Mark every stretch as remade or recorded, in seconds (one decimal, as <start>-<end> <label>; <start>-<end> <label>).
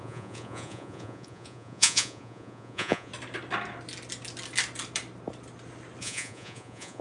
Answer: 0.0-3.1 remade; 3.1-6.0 recorded; 6.0-7.0 remade